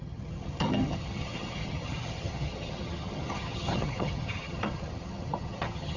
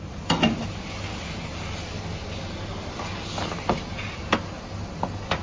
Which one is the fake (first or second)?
first